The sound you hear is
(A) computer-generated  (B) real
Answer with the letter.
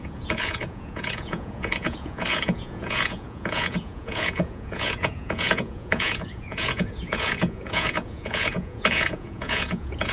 A